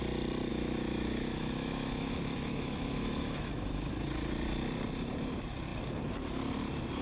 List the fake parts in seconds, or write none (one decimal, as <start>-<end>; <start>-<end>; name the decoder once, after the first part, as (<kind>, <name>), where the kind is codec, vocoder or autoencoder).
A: 0.5-3.9 (autoencoder, DAC-VAE)